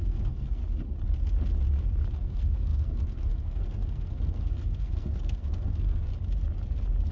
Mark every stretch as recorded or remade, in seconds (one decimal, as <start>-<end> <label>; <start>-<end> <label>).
0.0-0.6 remade; 0.6-2.1 recorded; 2.1-6.1 remade; 6.1-7.1 recorded